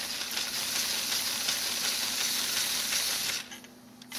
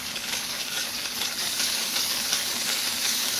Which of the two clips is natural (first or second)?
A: first